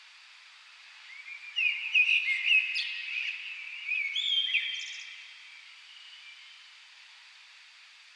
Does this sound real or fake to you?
real